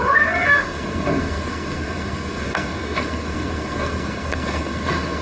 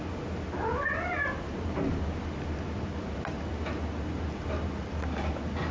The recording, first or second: second